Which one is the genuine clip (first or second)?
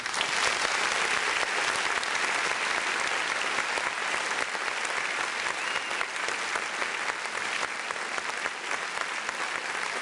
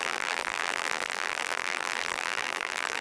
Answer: first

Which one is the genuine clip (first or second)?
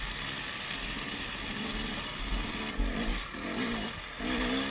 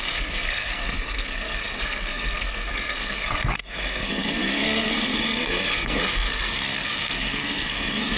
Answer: first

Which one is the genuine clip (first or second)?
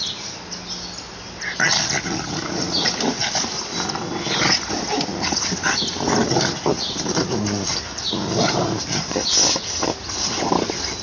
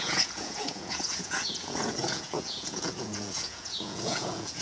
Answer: first